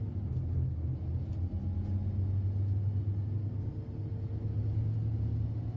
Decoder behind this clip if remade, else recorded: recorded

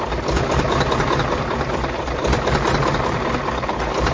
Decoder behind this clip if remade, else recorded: remade, vocoder, BigVGAN v2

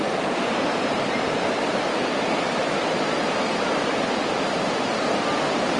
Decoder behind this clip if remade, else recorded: remade, vocoder, BigVGAN v2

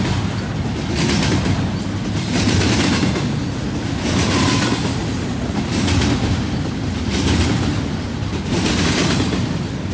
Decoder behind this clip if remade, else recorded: recorded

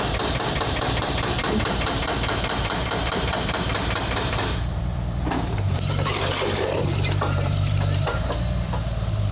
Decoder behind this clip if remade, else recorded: remade, vocoder, BigVGAN v2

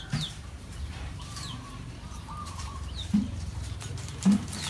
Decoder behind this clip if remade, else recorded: remade, vocoder, BigVGAN v2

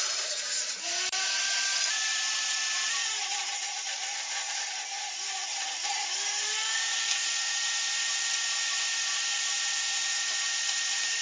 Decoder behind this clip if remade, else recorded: remade, vocoder, BigVGAN v2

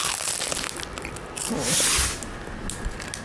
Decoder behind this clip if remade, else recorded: recorded